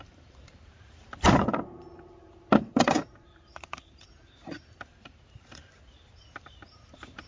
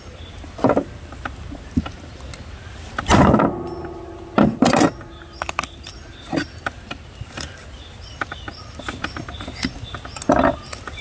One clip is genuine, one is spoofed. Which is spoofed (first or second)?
first